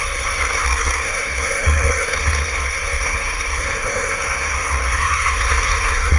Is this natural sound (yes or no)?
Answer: no